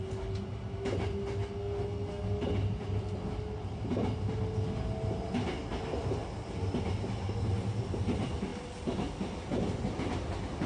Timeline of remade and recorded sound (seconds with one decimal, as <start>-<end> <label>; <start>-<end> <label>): 0.0-1.6 recorded; 1.6-2.2 remade; 2.2-10.7 recorded